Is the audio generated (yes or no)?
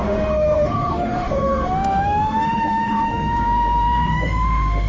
yes